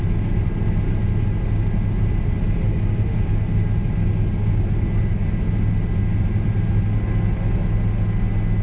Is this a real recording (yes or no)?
yes